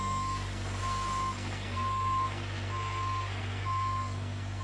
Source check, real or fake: fake